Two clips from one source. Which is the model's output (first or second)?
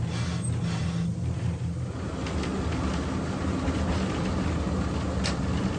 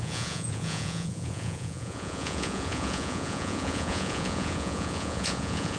second